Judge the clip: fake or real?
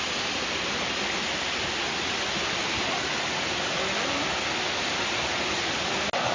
real